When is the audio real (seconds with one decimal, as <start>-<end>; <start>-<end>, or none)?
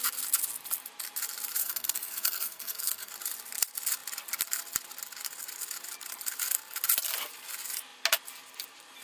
0.0-1.6; 3.1-9.0